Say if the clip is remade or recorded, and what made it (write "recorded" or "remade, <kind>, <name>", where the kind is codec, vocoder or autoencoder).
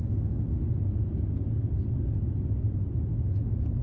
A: recorded